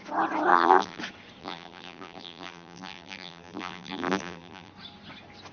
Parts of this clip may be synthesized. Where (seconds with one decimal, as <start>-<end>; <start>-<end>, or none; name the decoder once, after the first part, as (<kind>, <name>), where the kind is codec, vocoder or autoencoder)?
0.5-1.0 (vocoder, BigVGAN v2); 1.4-4.7